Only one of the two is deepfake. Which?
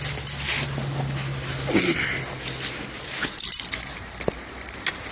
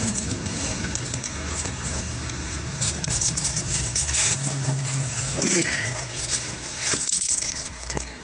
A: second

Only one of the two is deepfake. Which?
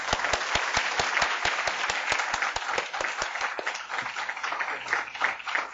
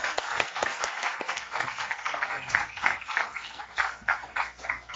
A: second